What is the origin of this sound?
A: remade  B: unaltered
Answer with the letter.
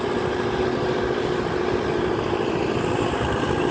B